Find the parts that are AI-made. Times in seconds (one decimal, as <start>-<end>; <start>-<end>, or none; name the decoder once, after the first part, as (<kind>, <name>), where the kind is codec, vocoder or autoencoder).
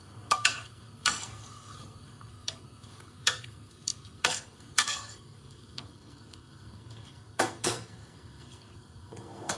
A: 0.0-9.6 (codec, SNAC)